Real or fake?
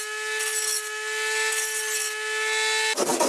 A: real